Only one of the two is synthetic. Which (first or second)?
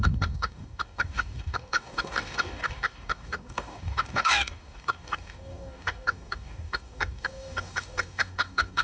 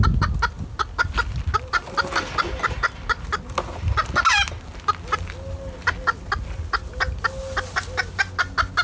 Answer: first